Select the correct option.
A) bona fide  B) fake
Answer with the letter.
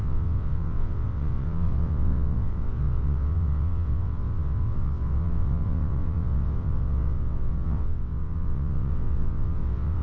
B